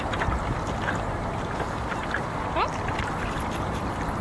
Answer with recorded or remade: recorded